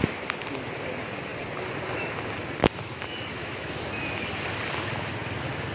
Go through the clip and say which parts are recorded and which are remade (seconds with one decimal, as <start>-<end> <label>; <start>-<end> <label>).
0.0-2.6 recorded; 2.6-4.2 remade; 4.2-5.7 recorded